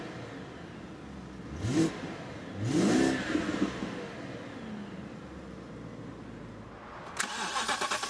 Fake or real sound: real